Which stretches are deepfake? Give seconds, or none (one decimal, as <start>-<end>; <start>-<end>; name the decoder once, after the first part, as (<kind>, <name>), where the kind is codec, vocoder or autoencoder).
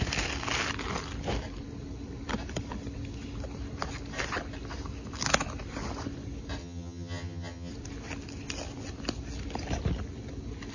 6.6-7.7 (vocoder, HiFi-GAN)